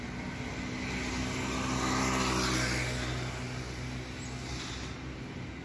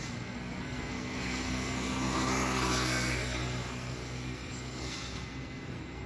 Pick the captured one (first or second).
first